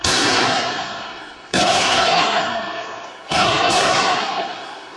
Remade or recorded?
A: remade